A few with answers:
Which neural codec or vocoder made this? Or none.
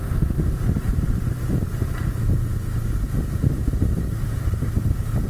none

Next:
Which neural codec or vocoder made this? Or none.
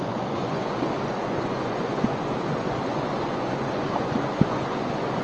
vocoder, Vocos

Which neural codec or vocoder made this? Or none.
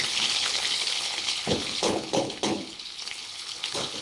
codec, HILCodec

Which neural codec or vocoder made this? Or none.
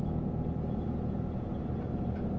none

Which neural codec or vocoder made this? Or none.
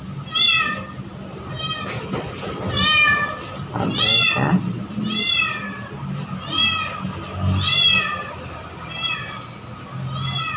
none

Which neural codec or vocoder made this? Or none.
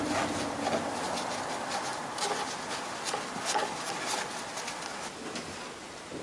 none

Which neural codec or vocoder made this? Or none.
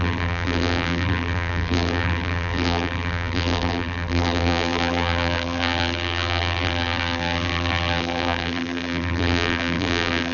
vocoder, BigVGAN v2